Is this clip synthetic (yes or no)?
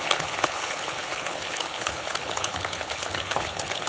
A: yes